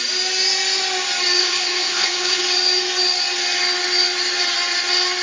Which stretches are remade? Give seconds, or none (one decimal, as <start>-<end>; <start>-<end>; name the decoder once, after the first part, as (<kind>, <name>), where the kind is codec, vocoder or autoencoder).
1.4-2.4 (codec, HILCodec)